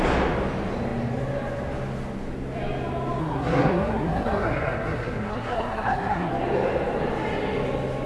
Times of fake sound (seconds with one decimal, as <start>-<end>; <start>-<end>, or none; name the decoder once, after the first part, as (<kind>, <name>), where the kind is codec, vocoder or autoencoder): 3.2-6.3 (codec, SNAC)